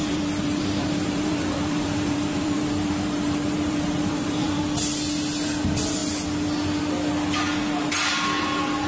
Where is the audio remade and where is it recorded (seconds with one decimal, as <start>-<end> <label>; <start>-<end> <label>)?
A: 0.0-4.6 remade; 4.6-8.9 recorded